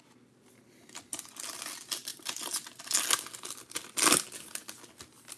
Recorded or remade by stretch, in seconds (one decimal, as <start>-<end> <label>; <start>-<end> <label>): 0.0-5.4 recorded